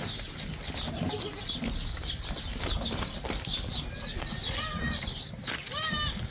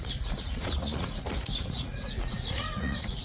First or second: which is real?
first